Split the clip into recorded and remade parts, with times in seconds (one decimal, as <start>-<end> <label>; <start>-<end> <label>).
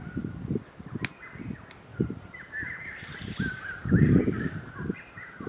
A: 0.0-1.9 recorded; 1.9-5.5 remade